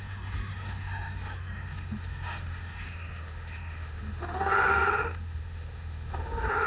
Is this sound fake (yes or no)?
yes